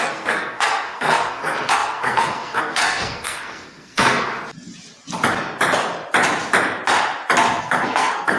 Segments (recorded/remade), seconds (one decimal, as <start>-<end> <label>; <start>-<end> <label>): 0.0-4.3 remade; 4.3-7.6 recorded; 7.6-8.4 remade